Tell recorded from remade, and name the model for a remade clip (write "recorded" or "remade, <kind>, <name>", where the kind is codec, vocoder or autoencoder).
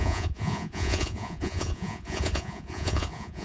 remade, vocoder, Vocos